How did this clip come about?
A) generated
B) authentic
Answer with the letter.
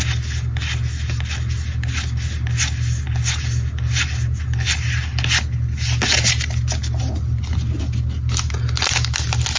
B